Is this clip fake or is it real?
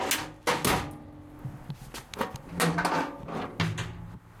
real